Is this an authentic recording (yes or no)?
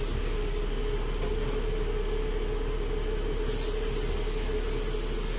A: yes